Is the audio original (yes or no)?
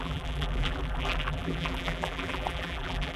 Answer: no